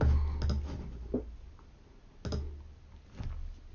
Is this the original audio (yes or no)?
yes